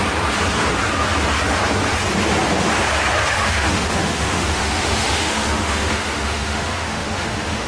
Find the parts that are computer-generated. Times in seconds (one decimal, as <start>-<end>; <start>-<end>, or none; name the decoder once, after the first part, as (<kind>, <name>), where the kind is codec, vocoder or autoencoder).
3.2-7.7 (autoencoder, DAC-VAE)

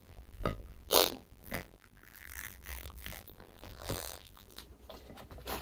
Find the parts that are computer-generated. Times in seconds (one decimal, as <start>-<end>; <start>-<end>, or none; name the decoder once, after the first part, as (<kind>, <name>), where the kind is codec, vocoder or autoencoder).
0.0-4.6 (vocoder, BigVGAN v2)

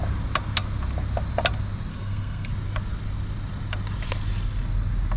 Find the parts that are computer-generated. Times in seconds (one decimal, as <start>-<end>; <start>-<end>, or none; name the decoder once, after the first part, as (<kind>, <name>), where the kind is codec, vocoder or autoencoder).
1.9-2.5 (codec, SNAC)